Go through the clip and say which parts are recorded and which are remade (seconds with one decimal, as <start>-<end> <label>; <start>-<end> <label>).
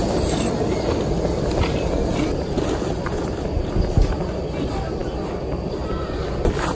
0.0-6.7 recorded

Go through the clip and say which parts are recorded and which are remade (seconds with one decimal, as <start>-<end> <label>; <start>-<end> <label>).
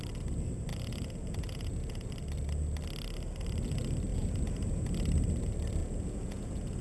0.0-0.7 recorded; 0.7-2.1 remade; 2.1-4.1 recorded; 4.1-4.9 remade; 4.9-5.8 recorded; 5.8-6.8 remade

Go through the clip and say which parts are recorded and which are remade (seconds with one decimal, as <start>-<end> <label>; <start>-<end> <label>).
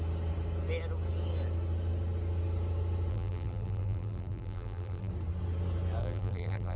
0.0-3.1 recorded; 3.1-5.1 remade; 5.1-6.0 recorded; 6.0-6.8 remade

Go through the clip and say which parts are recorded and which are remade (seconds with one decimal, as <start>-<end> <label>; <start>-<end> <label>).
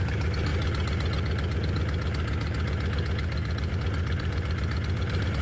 0.0-0.5 remade; 0.5-3.7 recorded; 3.7-5.4 remade